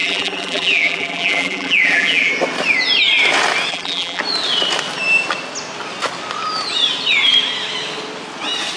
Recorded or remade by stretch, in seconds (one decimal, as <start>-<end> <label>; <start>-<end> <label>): 0.0-2.3 remade; 2.3-3.7 recorded; 3.7-4.2 remade; 4.2-8.8 recorded